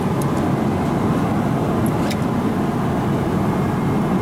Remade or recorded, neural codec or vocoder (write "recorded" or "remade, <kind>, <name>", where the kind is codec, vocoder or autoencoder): recorded